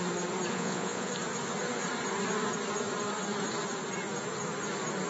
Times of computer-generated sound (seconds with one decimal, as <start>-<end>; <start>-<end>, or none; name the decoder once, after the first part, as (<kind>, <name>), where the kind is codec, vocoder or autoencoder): 0.5-1.1 (vocoder, Vocos)